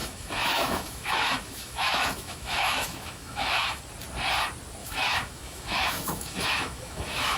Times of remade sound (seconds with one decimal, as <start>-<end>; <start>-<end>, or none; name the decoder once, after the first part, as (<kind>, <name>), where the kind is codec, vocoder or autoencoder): 0.0-3.8 (autoencoder, DAC-VAE); 4.8-7.4